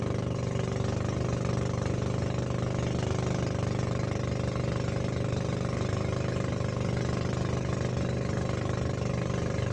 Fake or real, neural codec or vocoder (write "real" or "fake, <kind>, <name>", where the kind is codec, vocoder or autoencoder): real